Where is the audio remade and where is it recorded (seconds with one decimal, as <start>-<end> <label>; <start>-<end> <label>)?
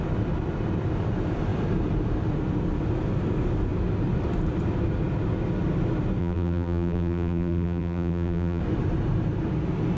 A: 0.0-6.2 recorded; 6.2-8.6 remade; 8.6-10.0 recorded